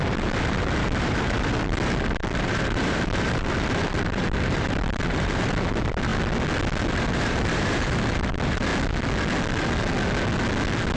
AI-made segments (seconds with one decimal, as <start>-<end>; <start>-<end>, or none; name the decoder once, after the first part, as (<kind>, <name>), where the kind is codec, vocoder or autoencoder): 0.0-6.1 (vocoder, BigVGAN v2); 6.8-8.7